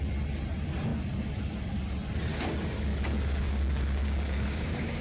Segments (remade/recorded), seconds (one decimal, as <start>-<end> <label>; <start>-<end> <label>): 0.0-2.3 recorded; 2.3-5.0 remade